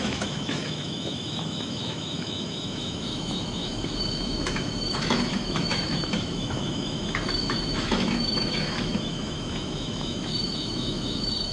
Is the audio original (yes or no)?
no